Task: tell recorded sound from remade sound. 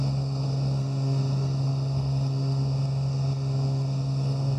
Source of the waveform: remade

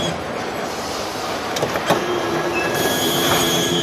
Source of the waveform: remade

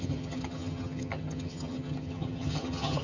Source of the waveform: remade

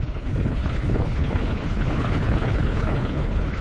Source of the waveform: remade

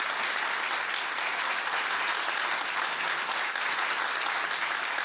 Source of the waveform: recorded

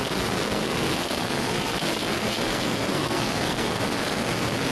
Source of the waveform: remade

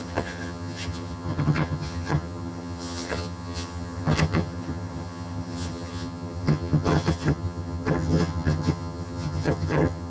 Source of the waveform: remade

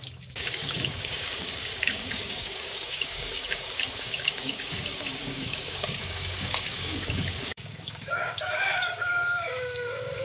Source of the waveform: remade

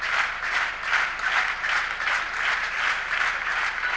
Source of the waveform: recorded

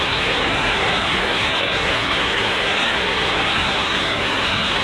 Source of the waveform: remade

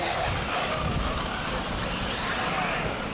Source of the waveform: recorded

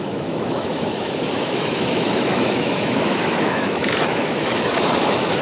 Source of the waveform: remade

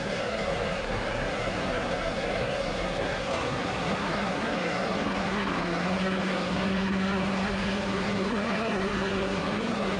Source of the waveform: remade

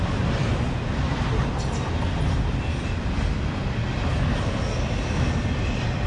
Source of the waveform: recorded